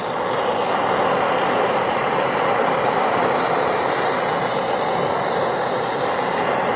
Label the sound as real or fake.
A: real